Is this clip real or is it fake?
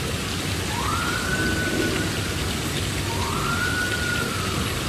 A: real